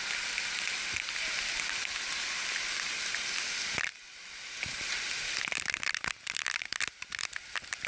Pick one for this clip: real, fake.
real